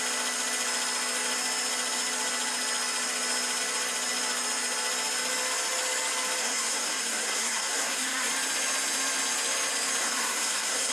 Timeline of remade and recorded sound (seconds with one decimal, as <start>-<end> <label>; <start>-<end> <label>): 0.0-6.4 recorded; 6.4-8.3 remade; 8.3-10.0 recorded; 10.0-10.9 remade